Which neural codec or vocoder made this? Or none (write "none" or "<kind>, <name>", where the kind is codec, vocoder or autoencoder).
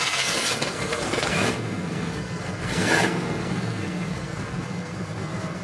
codec, SNAC